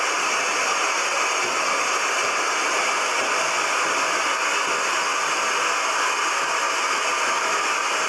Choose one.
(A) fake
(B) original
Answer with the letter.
B